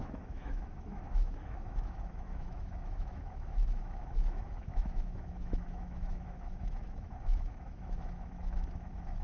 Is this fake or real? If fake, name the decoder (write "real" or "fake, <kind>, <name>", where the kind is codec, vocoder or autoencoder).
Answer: fake, autoencoder, DAC-VAE